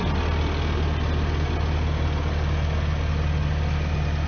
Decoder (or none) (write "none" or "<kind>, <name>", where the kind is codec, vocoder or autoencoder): none